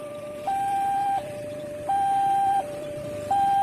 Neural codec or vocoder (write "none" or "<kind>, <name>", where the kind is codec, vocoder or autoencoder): vocoder, BigVGAN v2